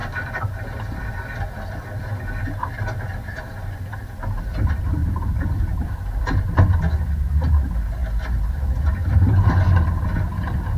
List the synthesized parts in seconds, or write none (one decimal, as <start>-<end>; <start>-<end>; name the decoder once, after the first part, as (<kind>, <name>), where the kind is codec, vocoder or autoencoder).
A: 0.0-1.1 (vocoder, BigVGAN v2); 5.0-6.2